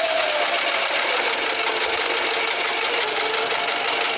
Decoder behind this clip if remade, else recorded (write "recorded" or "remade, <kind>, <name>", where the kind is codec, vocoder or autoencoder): recorded